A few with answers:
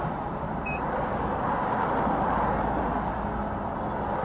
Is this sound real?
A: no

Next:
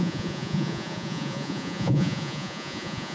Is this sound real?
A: no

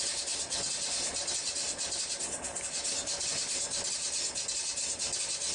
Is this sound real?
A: yes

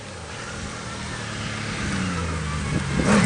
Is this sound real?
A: yes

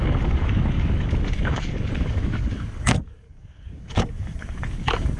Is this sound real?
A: no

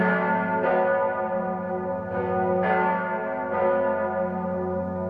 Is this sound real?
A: yes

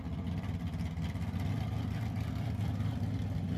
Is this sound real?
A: yes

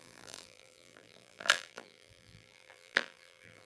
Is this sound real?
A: no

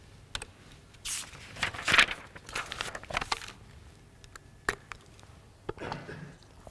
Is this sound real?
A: yes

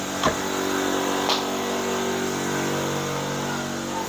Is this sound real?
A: yes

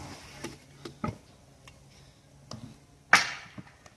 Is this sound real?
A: yes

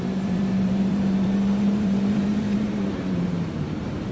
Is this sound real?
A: no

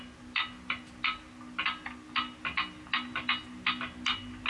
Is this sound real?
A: yes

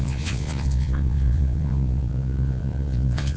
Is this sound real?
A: no